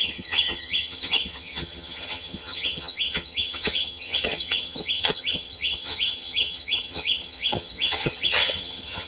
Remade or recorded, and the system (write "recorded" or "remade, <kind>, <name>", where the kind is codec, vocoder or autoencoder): remade, vocoder, HiFi-GAN